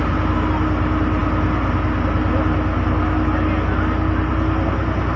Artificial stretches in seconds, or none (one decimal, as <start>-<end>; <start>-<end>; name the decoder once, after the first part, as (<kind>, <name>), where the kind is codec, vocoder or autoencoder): none